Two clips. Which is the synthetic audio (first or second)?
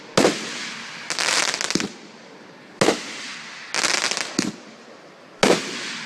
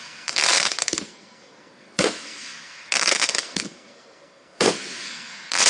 second